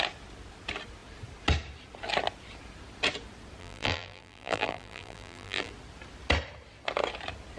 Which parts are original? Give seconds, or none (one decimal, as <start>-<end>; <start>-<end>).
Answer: 0.0-3.6; 5.7-7.6